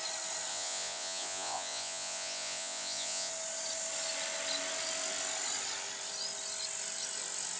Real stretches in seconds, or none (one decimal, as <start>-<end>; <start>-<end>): 0.0-0.5; 3.3-7.6